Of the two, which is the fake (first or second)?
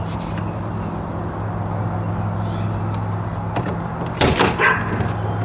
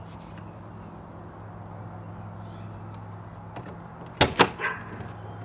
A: first